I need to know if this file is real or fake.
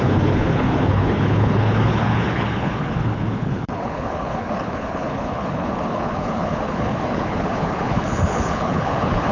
fake